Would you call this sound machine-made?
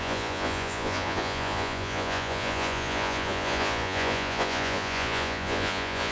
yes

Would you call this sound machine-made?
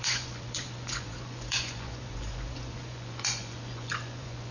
yes